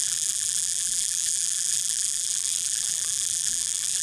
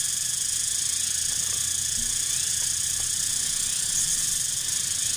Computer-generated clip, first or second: first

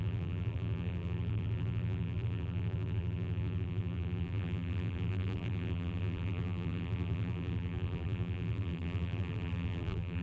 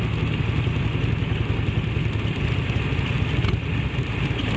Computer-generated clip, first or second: first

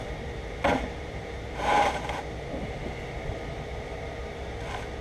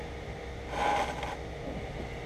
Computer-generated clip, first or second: first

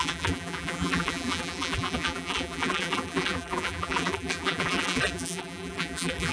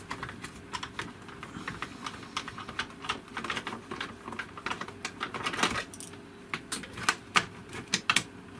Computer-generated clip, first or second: first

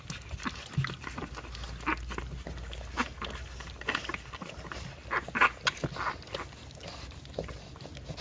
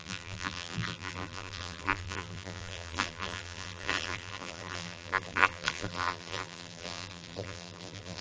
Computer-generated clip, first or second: second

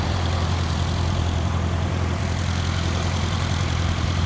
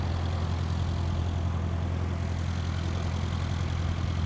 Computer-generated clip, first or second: first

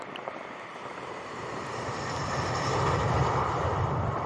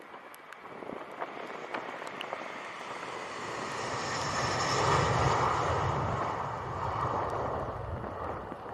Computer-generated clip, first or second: first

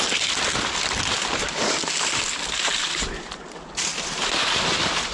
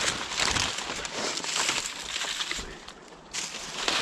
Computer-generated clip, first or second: second